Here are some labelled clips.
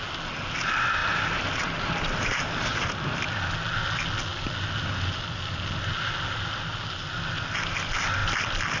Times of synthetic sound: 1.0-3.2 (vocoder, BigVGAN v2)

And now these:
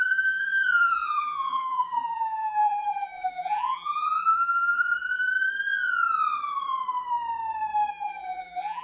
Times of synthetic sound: 0.0-5.2 (vocoder, BigVGAN v2); 7.9-8.8

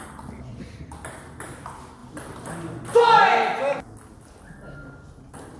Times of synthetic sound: 0.5-1.4 (vocoder, BigVGAN v2)

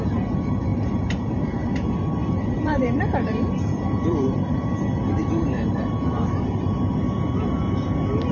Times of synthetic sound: 0.7-1.7 (vocoder, BigVGAN v2); 2.2-6.8

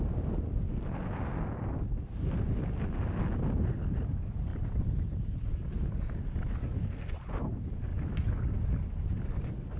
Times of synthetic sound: none

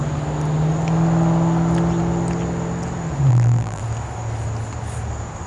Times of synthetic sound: 3.3-3.8 (vocoder, BigVGAN v2)

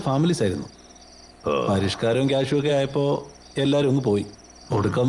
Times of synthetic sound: none